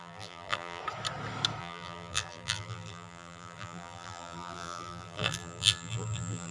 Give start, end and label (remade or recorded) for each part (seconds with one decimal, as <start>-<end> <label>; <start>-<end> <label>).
0.0-0.8 remade; 0.8-1.6 recorded; 1.6-6.5 remade